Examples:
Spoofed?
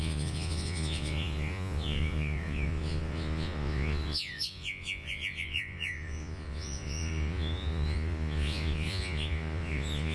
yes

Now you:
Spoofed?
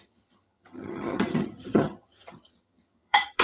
yes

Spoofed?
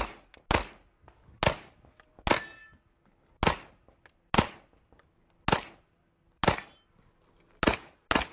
no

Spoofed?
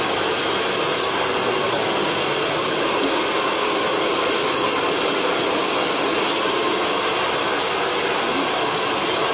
no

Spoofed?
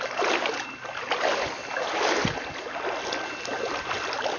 no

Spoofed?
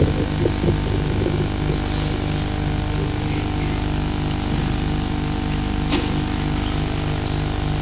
no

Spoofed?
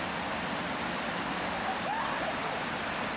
no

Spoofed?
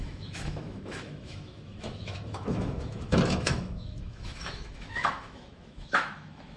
yes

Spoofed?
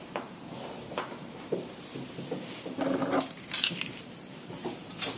yes